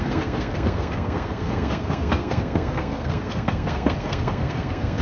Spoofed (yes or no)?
yes